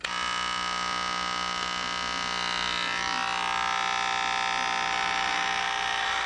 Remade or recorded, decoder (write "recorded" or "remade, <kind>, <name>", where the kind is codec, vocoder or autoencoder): recorded